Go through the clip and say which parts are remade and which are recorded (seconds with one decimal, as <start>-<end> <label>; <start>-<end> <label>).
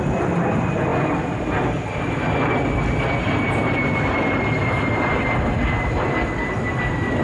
0.0-7.2 recorded